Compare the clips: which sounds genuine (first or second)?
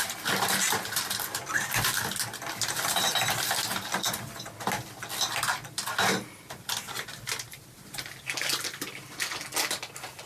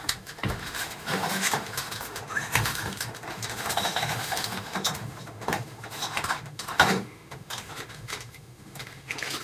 first